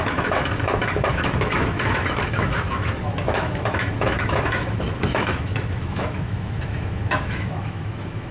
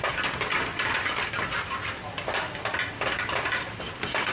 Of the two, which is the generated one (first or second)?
first